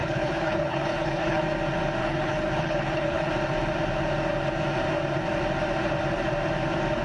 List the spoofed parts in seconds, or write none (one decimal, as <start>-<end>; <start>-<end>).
0.0-1.4; 2.0-3.3